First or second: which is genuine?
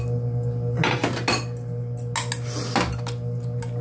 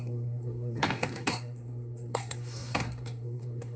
first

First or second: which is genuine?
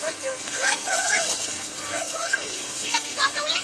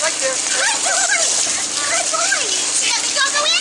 second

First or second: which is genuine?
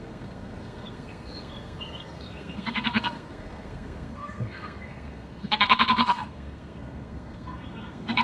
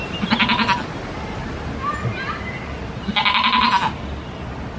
second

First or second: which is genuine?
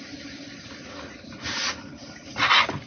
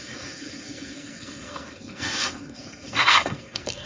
first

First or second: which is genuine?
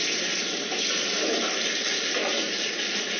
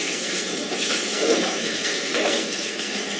first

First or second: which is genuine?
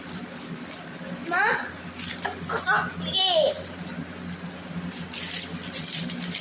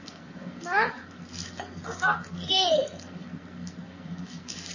first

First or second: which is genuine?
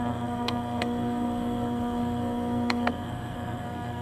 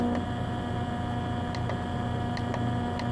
second